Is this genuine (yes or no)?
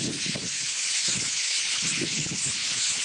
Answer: no